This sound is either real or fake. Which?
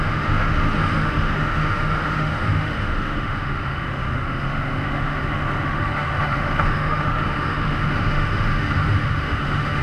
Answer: fake